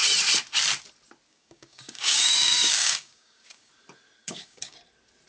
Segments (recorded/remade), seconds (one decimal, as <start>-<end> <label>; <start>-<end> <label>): 0.0-1.3 recorded; 1.3-3.7 remade; 3.7-4.2 recorded; 4.2-4.8 remade; 4.8-5.3 recorded